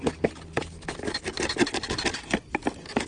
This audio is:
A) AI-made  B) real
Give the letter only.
B